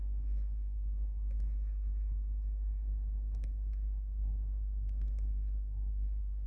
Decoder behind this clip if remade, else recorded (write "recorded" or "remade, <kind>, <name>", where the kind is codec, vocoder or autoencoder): remade, codec, SNAC